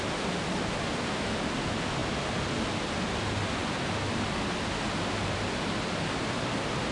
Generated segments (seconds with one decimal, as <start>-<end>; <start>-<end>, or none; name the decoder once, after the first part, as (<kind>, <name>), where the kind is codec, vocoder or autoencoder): none